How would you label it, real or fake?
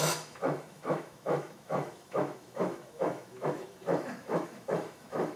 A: fake